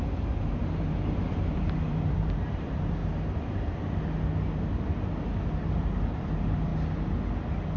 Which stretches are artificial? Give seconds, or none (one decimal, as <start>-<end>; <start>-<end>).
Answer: 0.0-3.0; 5.7-6.7